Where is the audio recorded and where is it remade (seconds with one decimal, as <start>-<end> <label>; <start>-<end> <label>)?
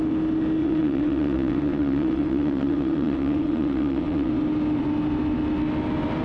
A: 0.0-0.6 recorded; 0.6-4.3 remade; 4.3-6.2 recorded